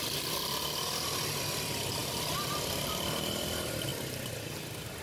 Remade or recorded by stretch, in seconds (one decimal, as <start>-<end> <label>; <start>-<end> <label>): 0.0-5.0 recorded